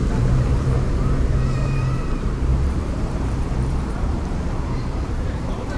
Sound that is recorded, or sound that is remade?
remade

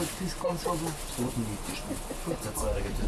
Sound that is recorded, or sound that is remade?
recorded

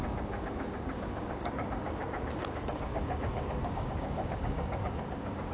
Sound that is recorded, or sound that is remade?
remade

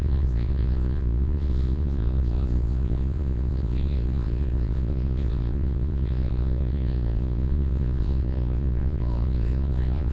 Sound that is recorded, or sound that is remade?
remade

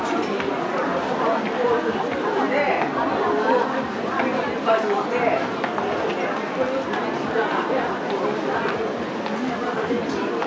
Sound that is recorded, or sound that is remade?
recorded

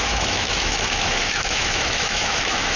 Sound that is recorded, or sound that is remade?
remade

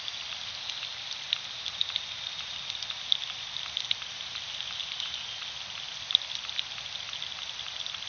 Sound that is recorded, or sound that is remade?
recorded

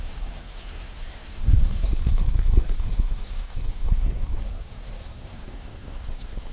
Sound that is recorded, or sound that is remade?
remade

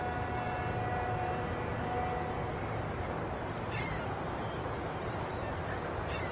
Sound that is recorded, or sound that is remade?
recorded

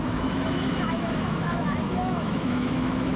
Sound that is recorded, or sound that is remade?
remade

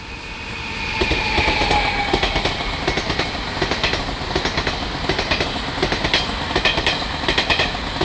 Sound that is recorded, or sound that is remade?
recorded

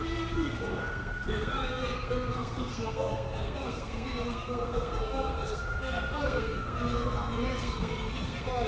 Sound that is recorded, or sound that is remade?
remade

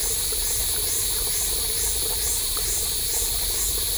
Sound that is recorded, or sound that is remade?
recorded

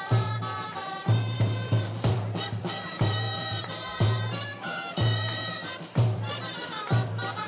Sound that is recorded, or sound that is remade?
remade